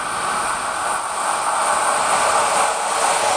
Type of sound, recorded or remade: recorded